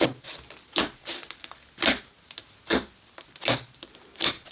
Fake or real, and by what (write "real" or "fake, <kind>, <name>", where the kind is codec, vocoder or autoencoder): real